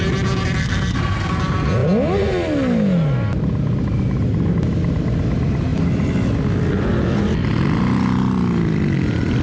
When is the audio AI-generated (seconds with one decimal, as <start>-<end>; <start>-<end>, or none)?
0.6-1.3